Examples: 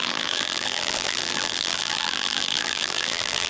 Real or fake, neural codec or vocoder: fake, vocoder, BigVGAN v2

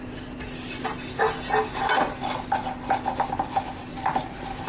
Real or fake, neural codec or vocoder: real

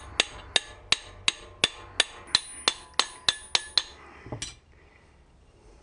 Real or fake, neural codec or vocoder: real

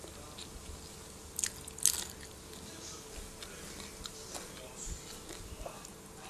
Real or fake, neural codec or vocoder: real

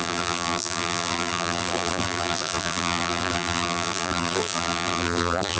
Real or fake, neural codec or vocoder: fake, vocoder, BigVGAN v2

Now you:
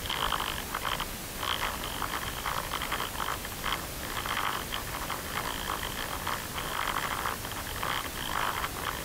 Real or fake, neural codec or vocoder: real